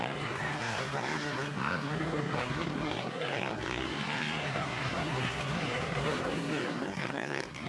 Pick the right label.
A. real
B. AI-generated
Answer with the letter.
B